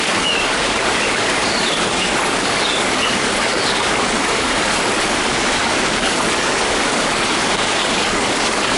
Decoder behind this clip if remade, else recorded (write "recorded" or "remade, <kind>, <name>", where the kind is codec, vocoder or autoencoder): remade, codec, DAC